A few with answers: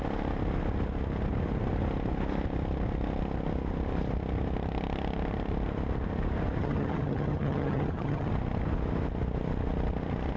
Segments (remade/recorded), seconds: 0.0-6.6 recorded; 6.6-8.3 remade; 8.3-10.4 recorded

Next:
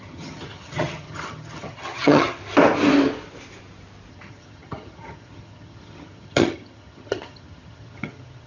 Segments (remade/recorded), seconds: 0.0-2.4 remade; 2.4-4.1 recorded; 4.1-8.5 remade

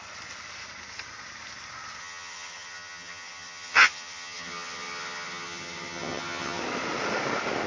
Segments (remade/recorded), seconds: 0.0-2.0 recorded; 2.0-6.6 remade; 6.6-7.7 recorded

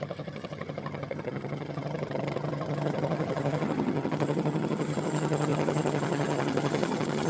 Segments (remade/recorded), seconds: 0.0-7.3 remade

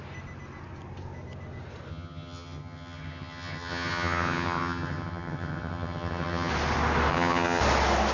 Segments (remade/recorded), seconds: 0.0-1.9 recorded; 1.9-6.5 remade; 6.5-7.1 recorded; 7.1-7.6 remade; 7.6-8.1 recorded